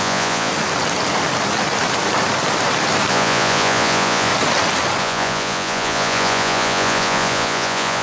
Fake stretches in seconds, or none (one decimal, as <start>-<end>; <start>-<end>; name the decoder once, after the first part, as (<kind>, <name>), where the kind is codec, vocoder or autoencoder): 0.0-0.5 (vocoder, Vocos); 3.1-4.3; 5.0-8.0